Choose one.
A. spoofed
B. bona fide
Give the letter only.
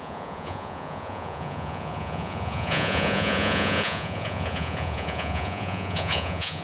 A